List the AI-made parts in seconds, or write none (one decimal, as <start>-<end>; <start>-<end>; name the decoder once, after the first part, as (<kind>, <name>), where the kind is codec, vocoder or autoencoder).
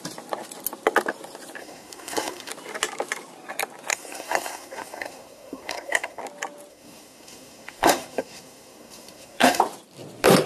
1.6-2.5 (codec, SNAC); 3.9-6.2; 6.7-9.6